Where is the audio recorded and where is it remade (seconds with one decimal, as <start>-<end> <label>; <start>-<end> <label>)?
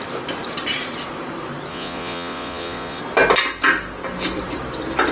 0.0-1.7 recorded; 1.7-3.0 remade; 3.0-5.1 recorded